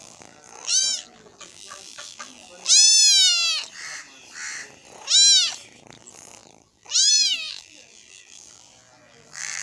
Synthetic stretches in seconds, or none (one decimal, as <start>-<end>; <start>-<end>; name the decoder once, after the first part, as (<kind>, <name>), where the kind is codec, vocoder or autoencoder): 0.0-2.9 (vocoder, BigVGAN v2); 6.0-9.6